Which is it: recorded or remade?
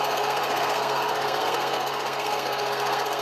remade